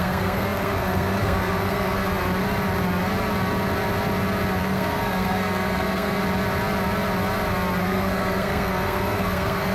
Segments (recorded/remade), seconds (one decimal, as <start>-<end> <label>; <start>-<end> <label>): 0.0-2.0 remade; 2.0-4.6 recorded; 4.6-6.2 remade; 6.2-7.8 recorded; 7.8-9.7 remade